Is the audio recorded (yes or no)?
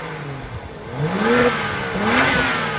yes